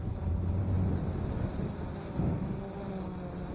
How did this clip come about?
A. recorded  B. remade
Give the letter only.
A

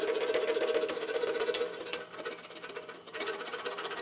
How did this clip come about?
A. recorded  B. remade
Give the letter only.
A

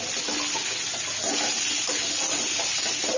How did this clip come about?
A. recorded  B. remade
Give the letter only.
A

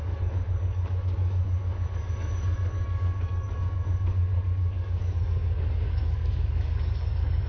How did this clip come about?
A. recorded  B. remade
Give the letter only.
B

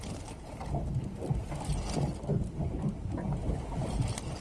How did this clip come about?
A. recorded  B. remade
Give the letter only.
A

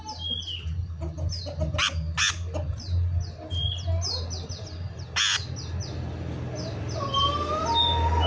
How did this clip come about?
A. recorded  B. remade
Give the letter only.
A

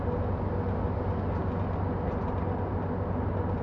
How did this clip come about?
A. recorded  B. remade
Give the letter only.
A